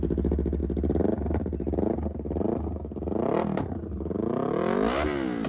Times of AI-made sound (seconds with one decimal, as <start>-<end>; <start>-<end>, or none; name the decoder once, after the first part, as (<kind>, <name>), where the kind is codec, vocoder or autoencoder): none